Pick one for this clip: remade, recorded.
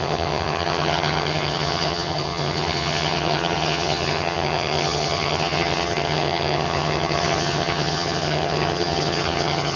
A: remade